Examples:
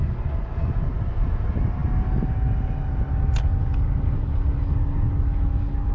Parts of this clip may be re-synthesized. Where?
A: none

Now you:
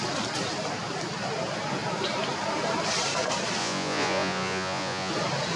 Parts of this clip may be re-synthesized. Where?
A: 3.6-5.1

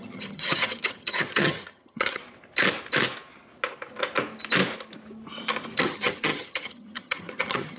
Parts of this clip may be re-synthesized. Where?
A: 0.0-2.2; 5.8-7.8

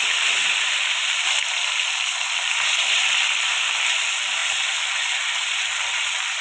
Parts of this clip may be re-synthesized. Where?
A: none

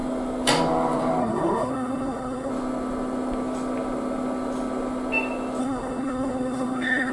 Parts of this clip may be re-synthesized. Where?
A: 1.2-2.5; 5.6-7.1

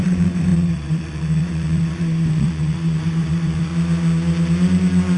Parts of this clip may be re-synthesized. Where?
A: 0.0-3.7